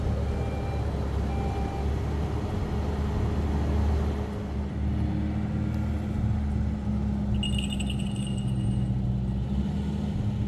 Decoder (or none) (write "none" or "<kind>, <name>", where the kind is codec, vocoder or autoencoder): none